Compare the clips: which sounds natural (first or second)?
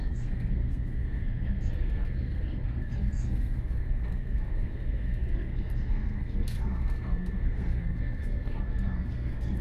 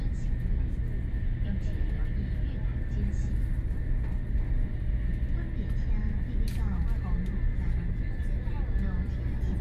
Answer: second